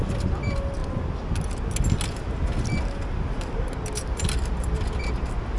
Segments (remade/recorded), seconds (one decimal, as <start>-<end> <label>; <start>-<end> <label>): 0.0-0.8 remade; 0.8-4.2 recorded; 4.2-5.6 remade